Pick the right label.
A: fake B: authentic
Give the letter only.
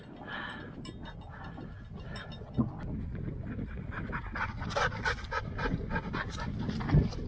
B